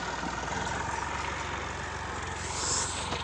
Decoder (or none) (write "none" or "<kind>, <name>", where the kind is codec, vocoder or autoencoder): none